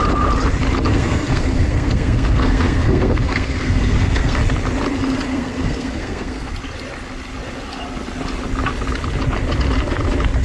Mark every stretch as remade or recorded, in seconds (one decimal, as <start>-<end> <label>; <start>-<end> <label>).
0.0-0.9 recorded; 0.9-4.4 remade; 4.4-5.3 recorded; 5.3-6.5 remade; 6.5-10.4 recorded

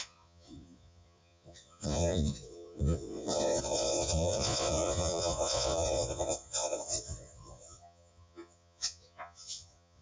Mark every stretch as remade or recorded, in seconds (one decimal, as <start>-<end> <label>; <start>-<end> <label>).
0.0-10.0 remade